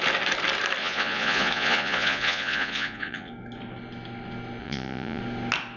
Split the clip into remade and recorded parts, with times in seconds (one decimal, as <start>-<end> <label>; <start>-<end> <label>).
0.0-0.8 recorded; 0.8-3.3 remade; 3.3-4.6 recorded; 4.6-5.2 remade; 5.2-5.8 recorded